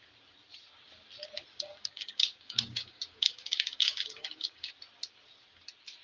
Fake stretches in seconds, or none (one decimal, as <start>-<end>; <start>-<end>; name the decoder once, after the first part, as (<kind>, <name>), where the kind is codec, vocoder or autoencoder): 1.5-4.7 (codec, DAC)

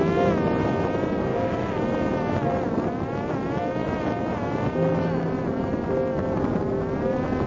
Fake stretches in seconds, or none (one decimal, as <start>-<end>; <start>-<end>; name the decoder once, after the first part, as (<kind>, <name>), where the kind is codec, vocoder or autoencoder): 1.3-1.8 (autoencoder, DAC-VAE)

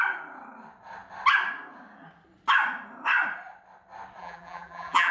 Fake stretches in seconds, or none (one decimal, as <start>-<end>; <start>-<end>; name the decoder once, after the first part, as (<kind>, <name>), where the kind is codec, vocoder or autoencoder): 4.2-5.1 (vocoder, BigVGAN v2)